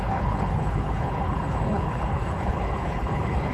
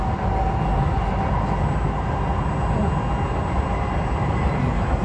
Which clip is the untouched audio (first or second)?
second